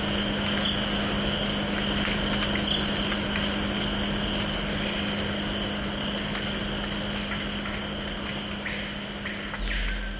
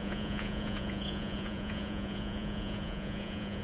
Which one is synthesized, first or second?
second